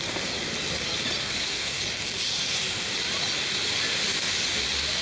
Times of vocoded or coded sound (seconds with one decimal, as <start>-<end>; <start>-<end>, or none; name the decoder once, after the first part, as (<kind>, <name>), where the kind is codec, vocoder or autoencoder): 1.2-1.8 (codec, SNAC)